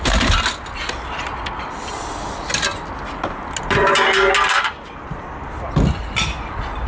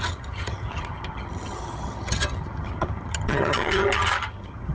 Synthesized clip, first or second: second